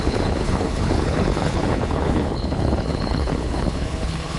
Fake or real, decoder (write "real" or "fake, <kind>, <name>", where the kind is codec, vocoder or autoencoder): fake, codec, HILCodec